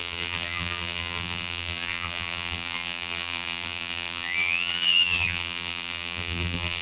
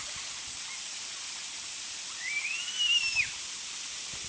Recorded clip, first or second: second